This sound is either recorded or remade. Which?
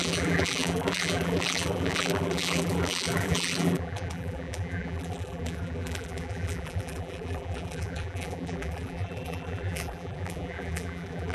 remade